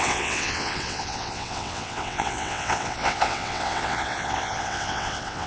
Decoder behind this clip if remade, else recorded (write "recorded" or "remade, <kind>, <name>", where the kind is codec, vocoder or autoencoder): remade, vocoder, WaveNeXt